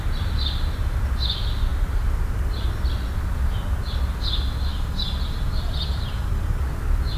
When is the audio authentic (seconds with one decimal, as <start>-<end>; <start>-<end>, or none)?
0.0-4.7; 6.6-7.2